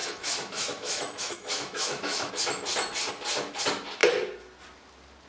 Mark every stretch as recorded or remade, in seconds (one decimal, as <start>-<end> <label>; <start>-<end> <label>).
0.0-2.3 remade; 2.3-5.3 recorded